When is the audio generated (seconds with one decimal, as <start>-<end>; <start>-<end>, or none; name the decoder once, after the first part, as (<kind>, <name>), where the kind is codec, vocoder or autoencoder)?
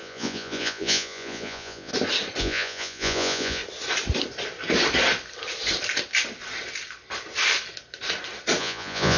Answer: 0.0-1.9 (vocoder, Vocos); 2.4-3.6; 8.6-9.2